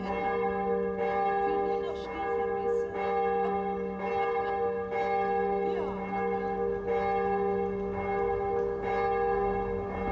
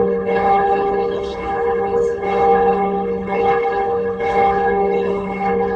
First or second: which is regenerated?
second